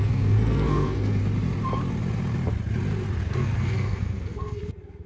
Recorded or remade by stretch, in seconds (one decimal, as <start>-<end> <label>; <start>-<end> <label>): 0.0-1.2 remade; 1.2-3.3 recorded; 3.3-5.1 remade